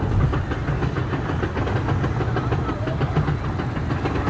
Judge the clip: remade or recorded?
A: recorded